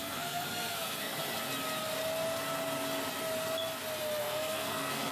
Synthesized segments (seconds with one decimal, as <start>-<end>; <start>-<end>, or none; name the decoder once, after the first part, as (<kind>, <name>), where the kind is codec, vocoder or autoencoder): 0.0-1.1 (codec, SNAC); 4.2-5.1